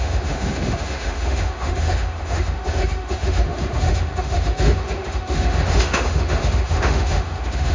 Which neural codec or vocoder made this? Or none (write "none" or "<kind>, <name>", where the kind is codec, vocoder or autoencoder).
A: autoencoder, DAC-VAE